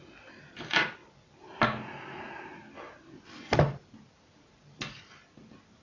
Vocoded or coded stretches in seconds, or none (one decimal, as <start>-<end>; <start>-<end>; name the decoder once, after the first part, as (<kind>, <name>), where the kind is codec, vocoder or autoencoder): none